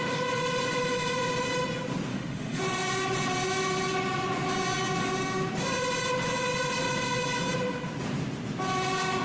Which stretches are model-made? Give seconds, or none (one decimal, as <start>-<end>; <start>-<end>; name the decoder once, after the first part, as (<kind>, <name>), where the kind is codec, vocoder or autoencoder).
2.1-2.6 (autoencoder, DAC-VAE)